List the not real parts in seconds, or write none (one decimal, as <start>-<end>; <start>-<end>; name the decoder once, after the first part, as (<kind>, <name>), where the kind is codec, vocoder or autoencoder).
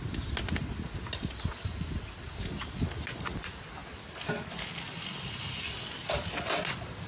none